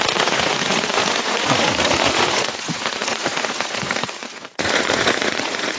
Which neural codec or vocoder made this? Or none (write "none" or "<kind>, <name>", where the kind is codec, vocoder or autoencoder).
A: vocoder, Vocos